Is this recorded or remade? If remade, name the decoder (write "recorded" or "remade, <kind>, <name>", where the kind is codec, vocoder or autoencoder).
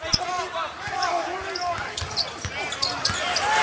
recorded